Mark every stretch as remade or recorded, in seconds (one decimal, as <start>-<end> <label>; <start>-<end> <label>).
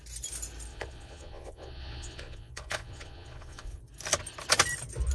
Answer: 0.0-0.7 recorded; 0.7-3.8 remade; 3.8-5.1 recorded